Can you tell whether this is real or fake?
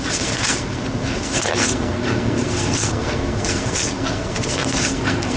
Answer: fake